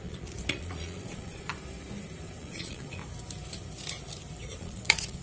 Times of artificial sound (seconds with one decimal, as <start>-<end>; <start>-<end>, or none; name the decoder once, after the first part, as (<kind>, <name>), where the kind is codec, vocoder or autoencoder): 0.0-1.5 (vocoder, Vocos); 2.4-3.0; 4.4-5.2

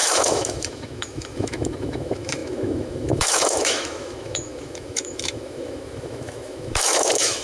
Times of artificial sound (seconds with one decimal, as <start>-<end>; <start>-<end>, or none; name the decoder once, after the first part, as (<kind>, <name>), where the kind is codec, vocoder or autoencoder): 0.0-7.4 (autoencoder, DAC-VAE)

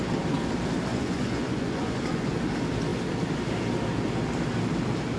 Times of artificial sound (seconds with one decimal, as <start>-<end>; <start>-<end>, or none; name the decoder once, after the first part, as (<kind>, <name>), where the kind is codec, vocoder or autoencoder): 0.9-2.4 (vocoder, Vocos)

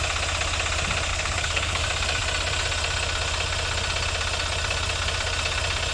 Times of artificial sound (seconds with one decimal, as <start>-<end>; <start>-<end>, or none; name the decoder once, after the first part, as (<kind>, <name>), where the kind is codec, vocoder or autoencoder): 1.1-1.8 (codec, HILCodec)

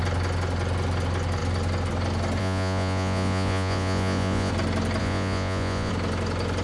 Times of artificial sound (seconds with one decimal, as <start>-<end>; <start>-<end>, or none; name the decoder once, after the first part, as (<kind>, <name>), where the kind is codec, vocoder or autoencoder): 2.4-4.5 (vocoder, Vocos); 5.0-5.9

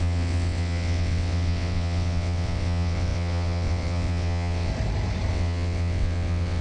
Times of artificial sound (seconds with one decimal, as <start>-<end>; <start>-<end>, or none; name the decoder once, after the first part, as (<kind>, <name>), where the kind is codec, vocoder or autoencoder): 0.0-4.7 (vocoder, WaveNeXt); 5.3-6.6

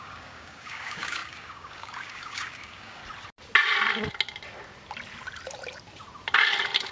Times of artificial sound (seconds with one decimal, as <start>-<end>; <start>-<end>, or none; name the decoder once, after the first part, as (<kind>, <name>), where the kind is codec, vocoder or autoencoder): 0.0-3.0 (codec, DAC)

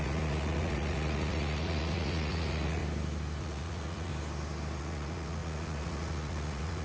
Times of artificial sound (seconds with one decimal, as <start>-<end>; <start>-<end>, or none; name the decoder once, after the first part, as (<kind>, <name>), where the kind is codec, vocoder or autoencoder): 0.0-2.8 (vocoder, Vocos); 3.4-4.1; 4.8-6.8